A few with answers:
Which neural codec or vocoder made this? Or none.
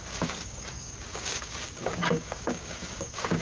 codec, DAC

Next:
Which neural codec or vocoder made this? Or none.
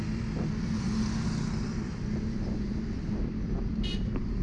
none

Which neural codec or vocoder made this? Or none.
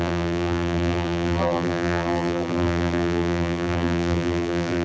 vocoder, BigVGAN v2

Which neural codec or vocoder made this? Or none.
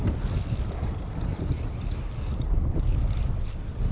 none